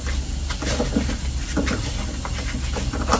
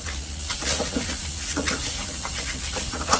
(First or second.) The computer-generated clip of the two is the second